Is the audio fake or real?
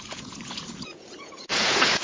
fake